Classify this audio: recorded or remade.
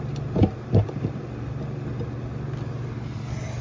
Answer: recorded